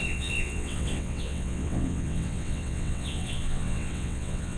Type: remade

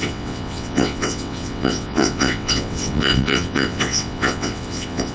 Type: remade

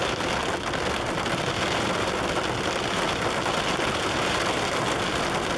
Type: recorded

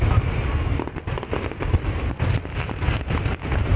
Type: recorded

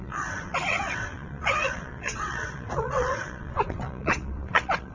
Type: remade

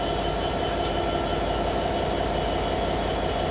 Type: recorded